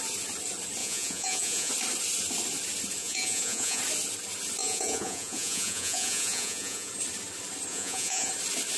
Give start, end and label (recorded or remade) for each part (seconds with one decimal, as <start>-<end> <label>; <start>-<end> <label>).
0.0-0.8 recorded; 0.8-1.7 remade; 1.7-3.0 recorded; 3.0-3.8 remade; 3.8-4.6 recorded; 4.6-6.9 remade; 6.9-7.7 recorded; 7.7-8.3 remade; 8.3-8.8 recorded

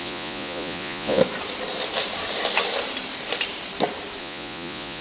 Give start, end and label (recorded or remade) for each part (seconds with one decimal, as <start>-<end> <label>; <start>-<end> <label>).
0.0-1.2 remade; 1.2-4.2 recorded; 4.2-5.0 remade

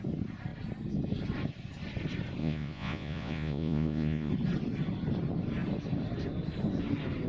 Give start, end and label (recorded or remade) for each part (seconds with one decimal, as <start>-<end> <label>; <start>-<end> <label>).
0.0-2.4 recorded; 2.4-4.3 remade; 4.3-7.3 recorded

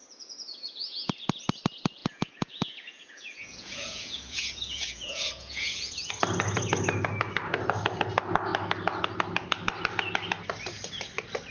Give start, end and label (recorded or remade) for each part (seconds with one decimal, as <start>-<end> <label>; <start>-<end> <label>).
0.0-1.1 remade; 1.1-2.0 recorded; 2.0-6.1 remade; 6.1-11.5 recorded

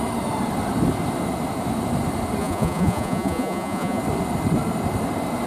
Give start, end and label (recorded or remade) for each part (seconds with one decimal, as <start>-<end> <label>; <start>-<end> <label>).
0.0-2.4 recorded; 2.4-4.0 remade; 4.0-5.5 recorded